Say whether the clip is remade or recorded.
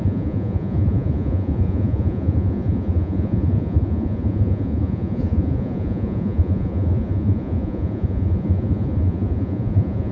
remade